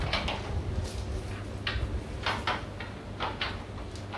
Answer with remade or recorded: recorded